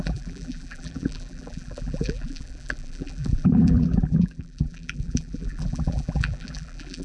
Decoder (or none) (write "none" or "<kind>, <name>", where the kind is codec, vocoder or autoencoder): vocoder, BigVGAN v2